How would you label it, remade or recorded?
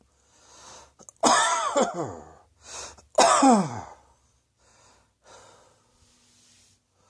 recorded